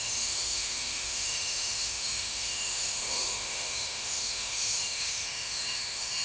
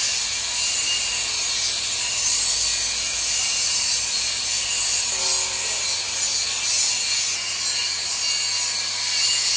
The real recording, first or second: second